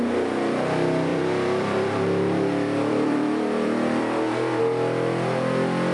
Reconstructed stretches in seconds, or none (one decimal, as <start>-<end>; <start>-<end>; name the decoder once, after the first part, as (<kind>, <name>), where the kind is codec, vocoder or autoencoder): 1.1-4.6 (vocoder, BigVGAN v2)